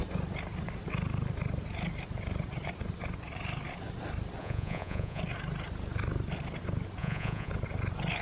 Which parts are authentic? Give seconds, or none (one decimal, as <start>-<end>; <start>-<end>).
0.0-4.4; 5.2-7.0; 7.5-8.2